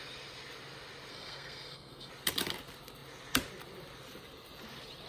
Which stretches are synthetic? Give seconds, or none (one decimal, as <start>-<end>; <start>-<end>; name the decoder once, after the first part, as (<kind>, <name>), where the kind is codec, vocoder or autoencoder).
1.1-2.1 (codec, SNAC)